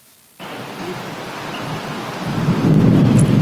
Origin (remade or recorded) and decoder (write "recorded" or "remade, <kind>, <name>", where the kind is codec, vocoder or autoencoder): recorded